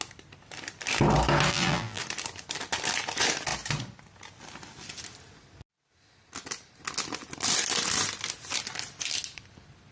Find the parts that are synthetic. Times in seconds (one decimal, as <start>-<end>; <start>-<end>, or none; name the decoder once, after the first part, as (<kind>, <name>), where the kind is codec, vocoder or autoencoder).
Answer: 1.5-2.0 (vocoder, BigVGAN v2)